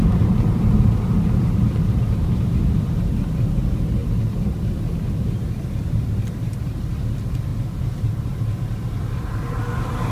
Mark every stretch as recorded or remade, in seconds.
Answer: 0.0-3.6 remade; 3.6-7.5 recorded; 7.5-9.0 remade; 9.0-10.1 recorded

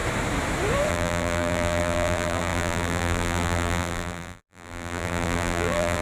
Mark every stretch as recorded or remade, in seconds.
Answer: 0.0-0.9 recorded; 0.9-6.0 remade

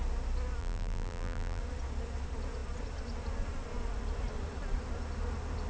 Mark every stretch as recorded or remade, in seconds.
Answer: 0.0-0.6 recorded; 0.6-1.6 remade; 1.6-5.7 recorded

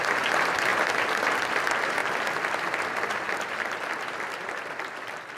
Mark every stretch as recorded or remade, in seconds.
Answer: 0.0-2.0 recorded; 2.0-5.4 remade